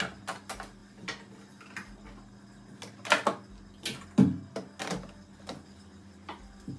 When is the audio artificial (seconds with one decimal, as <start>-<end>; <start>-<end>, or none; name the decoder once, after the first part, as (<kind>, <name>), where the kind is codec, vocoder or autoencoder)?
none